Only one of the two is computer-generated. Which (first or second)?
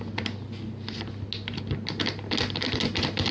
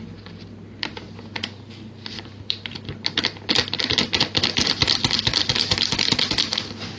second